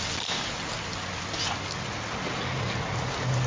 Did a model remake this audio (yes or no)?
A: no